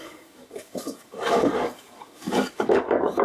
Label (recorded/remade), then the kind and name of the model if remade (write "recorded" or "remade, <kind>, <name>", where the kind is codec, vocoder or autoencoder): remade, codec, DAC